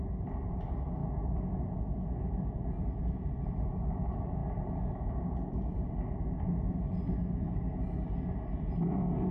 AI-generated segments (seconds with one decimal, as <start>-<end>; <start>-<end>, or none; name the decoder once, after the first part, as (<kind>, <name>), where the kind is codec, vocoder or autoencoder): 0.0-9.3 (vocoder, BigVGAN v2)

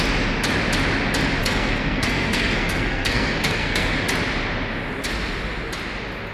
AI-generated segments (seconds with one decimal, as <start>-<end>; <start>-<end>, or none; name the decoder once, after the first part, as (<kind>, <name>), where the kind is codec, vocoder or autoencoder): 1.4-3.9 (codec, SNAC)